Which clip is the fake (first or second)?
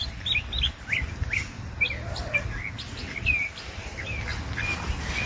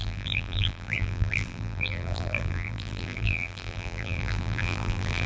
second